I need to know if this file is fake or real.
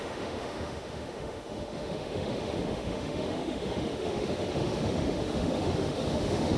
fake